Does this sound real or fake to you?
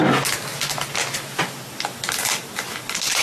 real